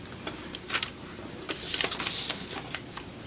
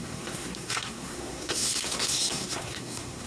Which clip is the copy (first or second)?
second